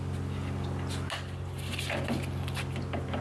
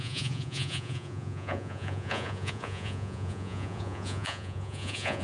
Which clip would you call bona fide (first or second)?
first